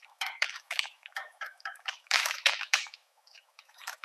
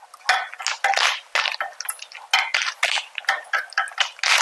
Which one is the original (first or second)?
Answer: second